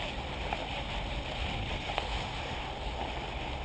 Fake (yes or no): no